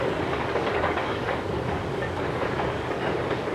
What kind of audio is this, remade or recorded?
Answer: remade